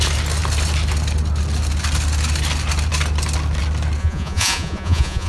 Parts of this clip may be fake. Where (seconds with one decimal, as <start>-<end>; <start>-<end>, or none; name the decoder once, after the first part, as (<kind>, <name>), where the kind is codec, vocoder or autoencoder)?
4.0-5.3 (vocoder, Vocos)